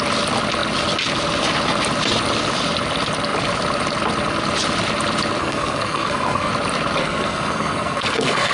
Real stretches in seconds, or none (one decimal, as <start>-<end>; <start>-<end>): 0.0-5.4; 6.5-7.0